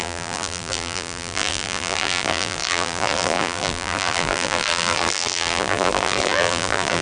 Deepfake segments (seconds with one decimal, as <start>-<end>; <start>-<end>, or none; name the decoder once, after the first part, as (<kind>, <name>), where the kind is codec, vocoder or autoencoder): 0.0-7.0 (vocoder, BigVGAN v2)